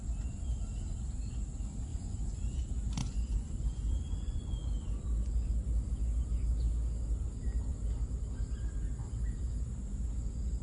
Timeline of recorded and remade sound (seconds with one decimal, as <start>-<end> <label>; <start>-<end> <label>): 0.0-1.9 recorded; 1.9-2.6 remade; 2.6-3.0 recorded; 3.0-5.0 remade; 5.0-10.6 recorded